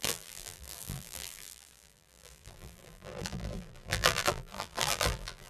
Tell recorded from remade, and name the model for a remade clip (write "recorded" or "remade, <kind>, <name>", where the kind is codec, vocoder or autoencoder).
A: remade, vocoder, BigVGAN v2